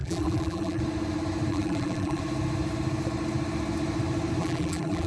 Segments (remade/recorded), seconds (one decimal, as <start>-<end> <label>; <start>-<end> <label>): 0.0-0.8 remade; 0.8-1.5 recorded; 1.5-2.2 remade; 2.2-4.4 recorded; 4.4-5.1 remade